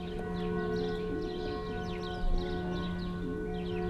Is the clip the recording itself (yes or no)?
yes